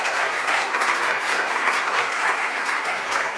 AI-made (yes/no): yes